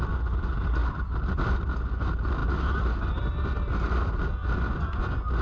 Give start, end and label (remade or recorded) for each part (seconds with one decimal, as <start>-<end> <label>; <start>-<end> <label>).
0.0-0.8 recorded; 0.8-1.9 remade; 1.9-5.4 recorded